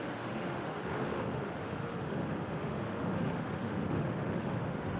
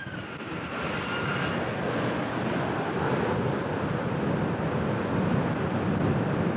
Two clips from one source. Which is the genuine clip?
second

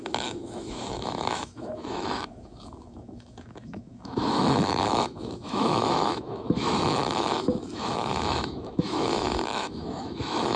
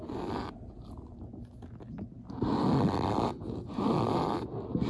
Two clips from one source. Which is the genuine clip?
second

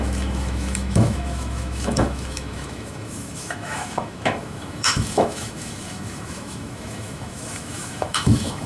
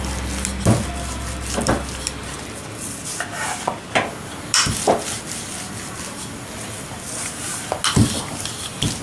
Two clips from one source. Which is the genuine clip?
second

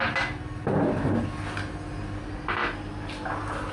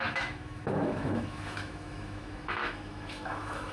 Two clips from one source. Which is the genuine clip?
first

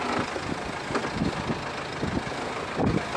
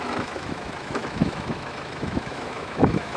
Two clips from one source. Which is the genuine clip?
first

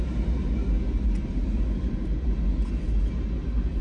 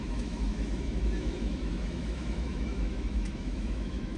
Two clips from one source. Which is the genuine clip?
first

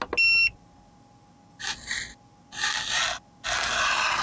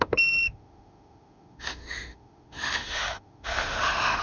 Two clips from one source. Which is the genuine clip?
first